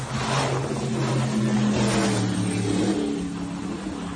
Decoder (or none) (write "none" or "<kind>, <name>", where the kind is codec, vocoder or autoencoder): none